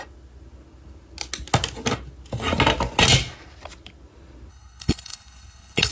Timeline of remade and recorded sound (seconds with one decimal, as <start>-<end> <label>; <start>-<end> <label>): 0.0-4.5 recorded; 4.5-5.9 remade